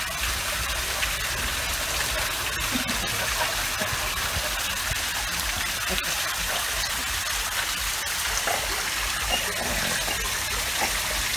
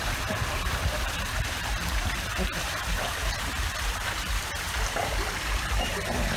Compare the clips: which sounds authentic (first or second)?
first